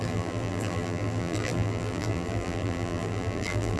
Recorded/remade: remade